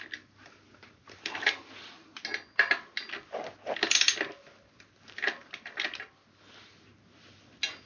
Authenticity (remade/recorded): recorded